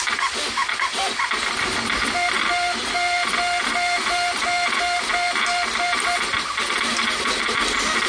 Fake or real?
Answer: real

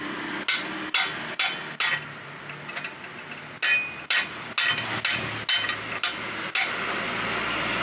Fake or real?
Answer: real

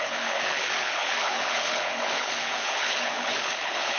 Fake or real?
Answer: fake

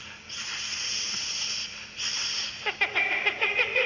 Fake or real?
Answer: real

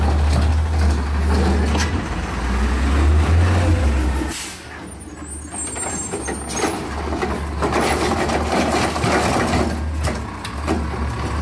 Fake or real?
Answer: real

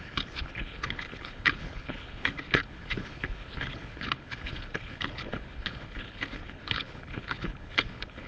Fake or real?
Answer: fake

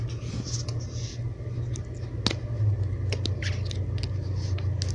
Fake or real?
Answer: real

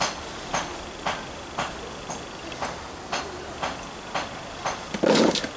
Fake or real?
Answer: real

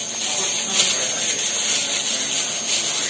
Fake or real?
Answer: real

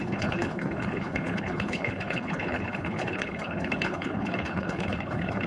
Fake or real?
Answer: fake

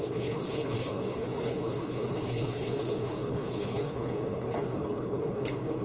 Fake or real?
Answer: fake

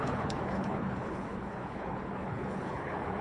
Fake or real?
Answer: fake